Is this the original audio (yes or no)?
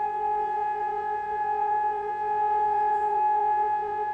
no